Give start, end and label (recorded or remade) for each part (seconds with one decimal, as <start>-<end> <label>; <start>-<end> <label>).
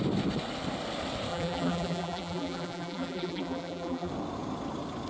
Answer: 0.0-1.3 recorded; 1.3-4.1 remade; 4.1-5.1 recorded